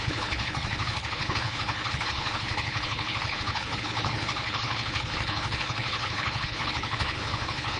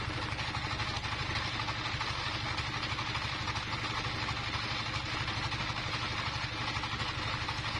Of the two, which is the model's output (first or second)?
first